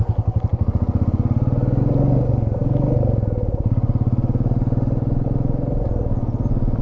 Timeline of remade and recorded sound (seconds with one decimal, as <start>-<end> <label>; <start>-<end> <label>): 0.0-6.8 recorded

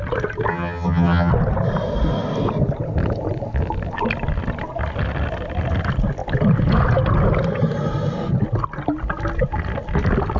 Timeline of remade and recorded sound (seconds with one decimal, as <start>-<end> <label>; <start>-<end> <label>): 0.0-0.5 recorded; 0.5-1.3 remade; 1.3-10.4 recorded

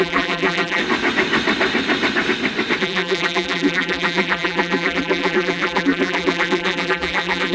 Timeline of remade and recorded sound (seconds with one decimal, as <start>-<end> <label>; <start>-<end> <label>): 0.0-0.8 remade; 0.8-2.8 recorded; 2.8-7.5 remade